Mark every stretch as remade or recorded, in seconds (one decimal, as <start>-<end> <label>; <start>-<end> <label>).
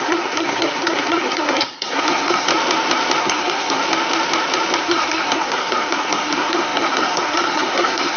0.0-2.5 remade; 2.5-3.2 recorded; 3.2-3.8 remade; 3.8-4.8 recorded; 4.8-8.2 remade